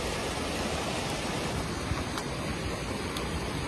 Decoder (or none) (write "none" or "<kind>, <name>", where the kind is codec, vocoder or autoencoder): none